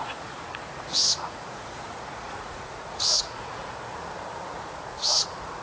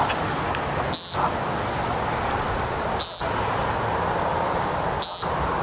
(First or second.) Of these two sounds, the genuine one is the second